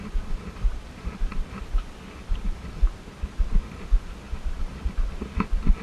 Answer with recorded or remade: recorded